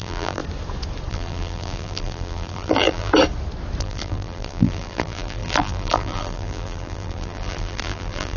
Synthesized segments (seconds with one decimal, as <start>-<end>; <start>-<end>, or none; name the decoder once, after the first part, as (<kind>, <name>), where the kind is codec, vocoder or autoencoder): 0.0-0.4 (vocoder, BigVGAN v2); 1.1-3.1; 3.8-8.4